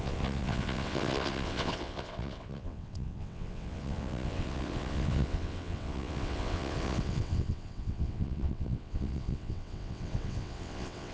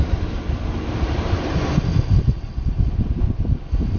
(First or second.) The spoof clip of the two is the first